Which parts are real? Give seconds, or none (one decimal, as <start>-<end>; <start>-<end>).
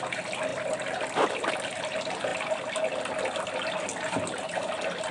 0.0-5.1